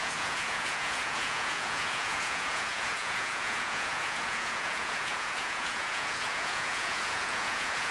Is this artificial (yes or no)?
yes